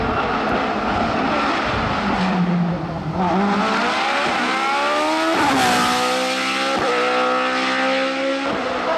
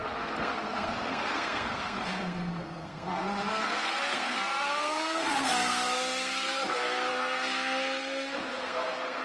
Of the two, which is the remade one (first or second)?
second